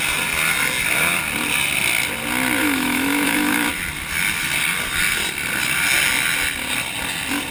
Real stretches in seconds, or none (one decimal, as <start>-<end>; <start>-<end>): 0.0-2.6; 3.7-7.5